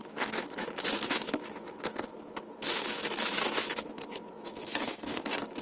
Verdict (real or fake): fake